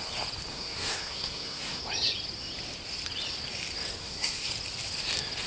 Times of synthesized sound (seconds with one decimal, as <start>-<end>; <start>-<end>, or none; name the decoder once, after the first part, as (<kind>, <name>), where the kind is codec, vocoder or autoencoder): 0.5-1.8 (codec, SNAC); 4.0-4.5